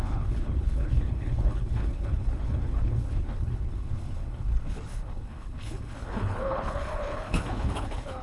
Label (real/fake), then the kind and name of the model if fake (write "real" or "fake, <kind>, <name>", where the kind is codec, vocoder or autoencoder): fake, codec, HILCodec